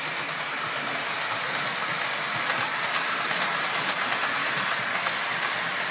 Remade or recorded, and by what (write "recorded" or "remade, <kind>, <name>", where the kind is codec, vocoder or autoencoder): recorded